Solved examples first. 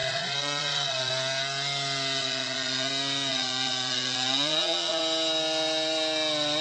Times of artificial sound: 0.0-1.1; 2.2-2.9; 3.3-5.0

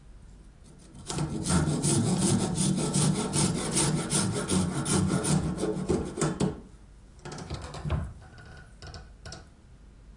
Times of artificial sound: 1.9-2.4; 4.9-6.4

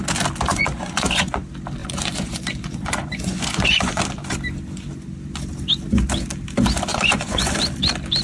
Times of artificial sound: 0.5-1.4; 1.8-4.0; 6.9-7.5

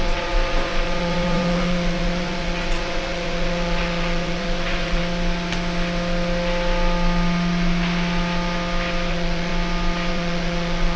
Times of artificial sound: 0.0-5.0; 9.1-9.5; 10.1-11.0

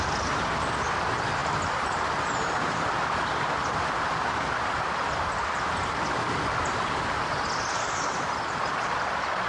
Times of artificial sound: none

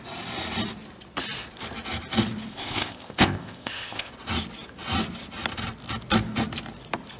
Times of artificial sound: 2.5-4.1

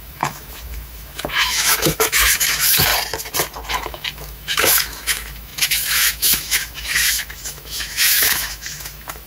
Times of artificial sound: 0.0-2.9; 3.7-9.3